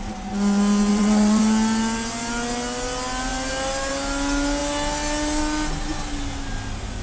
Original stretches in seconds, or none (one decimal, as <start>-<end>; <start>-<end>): 0.0-0.9; 1.4-7.0